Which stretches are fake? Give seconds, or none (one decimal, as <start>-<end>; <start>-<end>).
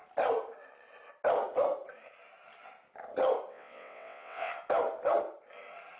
3.5-4.5